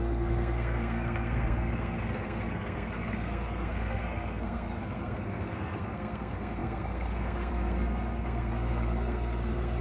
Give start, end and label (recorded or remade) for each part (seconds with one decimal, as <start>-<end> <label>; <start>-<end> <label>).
0.0-9.8 remade